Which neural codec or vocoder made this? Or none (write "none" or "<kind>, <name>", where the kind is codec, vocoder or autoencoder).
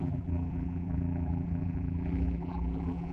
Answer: vocoder, BigVGAN v2